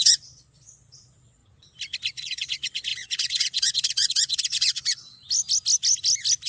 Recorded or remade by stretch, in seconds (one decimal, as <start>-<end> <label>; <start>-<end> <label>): 0.0-1.4 remade; 1.4-2.2 recorded; 2.2-5.2 remade; 5.2-6.5 recorded